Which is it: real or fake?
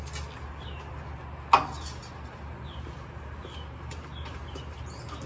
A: real